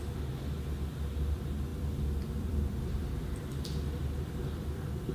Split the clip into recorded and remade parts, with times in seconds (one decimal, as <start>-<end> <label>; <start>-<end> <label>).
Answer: 0.0-1.7 recorded; 1.7-5.1 remade